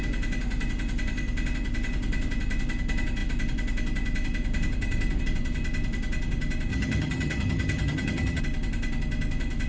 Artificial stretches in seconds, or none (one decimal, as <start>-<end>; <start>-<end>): 6.7-8.4